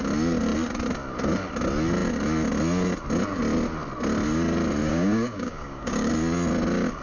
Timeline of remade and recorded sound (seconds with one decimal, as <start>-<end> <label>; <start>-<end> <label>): 0.0-4.8 recorded; 4.8-6.1 remade; 6.1-7.0 recorded